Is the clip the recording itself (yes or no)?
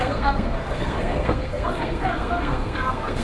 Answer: no